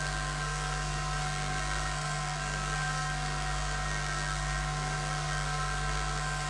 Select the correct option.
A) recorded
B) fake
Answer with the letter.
B